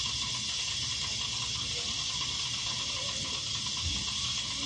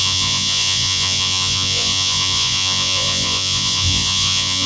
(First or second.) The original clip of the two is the first